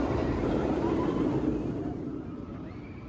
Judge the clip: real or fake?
fake